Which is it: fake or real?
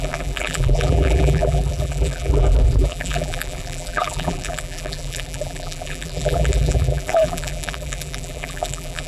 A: fake